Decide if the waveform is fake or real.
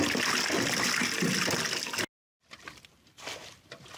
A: real